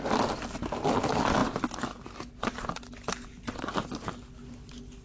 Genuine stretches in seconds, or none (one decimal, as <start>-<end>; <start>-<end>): 0.0-5.0